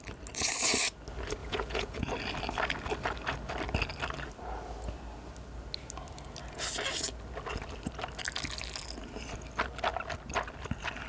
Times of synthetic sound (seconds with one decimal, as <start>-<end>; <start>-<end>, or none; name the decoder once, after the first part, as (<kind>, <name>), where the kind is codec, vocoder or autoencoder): 1.4-2.1 (vocoder, Vocos)